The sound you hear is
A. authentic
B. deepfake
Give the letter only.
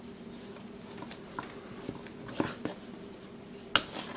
A